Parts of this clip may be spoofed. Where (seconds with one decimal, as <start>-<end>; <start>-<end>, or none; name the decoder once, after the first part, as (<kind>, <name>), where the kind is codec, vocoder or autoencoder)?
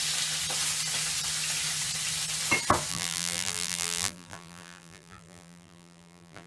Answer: 2.9-6.5 (vocoder, BigVGAN v2)